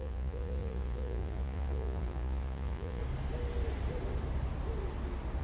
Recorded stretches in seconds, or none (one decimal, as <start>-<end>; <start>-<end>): 3.0-5.4